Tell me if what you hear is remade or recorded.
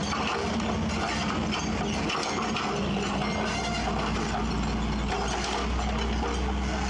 recorded